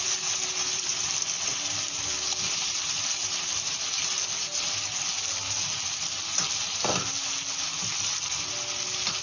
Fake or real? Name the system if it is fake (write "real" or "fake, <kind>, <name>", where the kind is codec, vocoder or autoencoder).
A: real